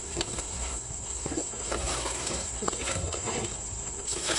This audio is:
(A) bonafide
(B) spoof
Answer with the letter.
B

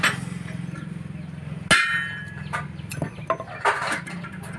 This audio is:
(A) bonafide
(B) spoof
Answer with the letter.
A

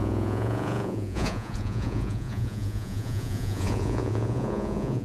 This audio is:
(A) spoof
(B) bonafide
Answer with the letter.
A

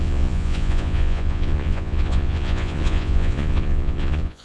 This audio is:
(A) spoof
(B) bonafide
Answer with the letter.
A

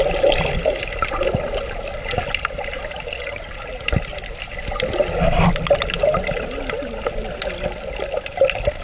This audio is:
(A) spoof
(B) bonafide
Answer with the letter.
B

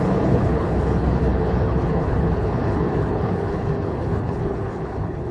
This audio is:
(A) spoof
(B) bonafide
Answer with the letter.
A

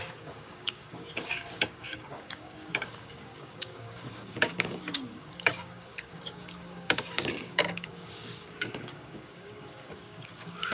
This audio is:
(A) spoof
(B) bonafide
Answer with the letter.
A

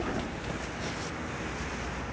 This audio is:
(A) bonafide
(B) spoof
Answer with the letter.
A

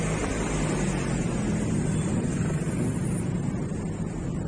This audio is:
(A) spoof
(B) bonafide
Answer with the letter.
B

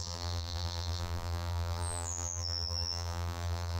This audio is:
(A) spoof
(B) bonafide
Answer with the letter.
A